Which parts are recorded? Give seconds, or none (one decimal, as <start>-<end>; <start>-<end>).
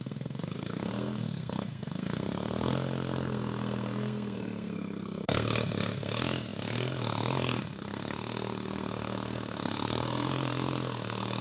none